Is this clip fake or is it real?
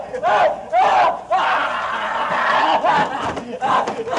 real